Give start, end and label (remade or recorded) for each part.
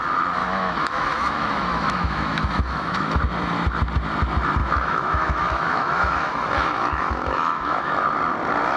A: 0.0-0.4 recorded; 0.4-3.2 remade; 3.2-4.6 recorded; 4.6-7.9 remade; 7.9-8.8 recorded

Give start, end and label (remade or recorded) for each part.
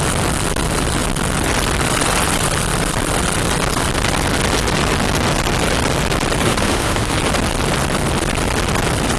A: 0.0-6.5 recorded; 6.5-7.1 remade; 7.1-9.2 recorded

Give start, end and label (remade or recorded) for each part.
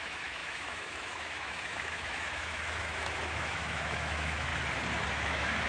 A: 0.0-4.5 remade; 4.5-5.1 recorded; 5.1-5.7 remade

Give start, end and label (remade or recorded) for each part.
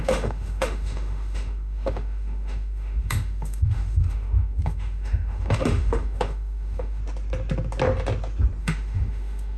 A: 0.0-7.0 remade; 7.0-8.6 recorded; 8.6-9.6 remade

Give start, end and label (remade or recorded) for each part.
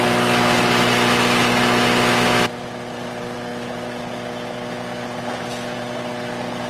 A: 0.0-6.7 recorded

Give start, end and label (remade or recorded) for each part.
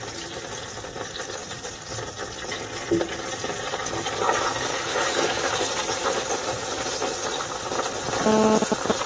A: 0.0-4.9 recorded; 4.9-5.5 remade; 5.5-9.1 recorded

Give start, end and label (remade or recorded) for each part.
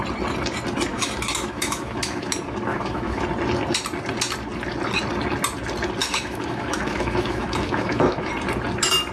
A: 0.0-0.9 recorded; 0.9-2.3 remade; 2.3-2.7 recorded; 2.7-3.2 remade; 3.2-6.0 recorded; 6.0-8.3 remade; 8.3-9.1 recorded